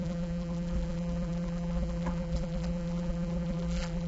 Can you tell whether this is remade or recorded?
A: remade